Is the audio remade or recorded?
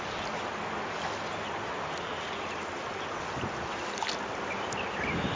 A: recorded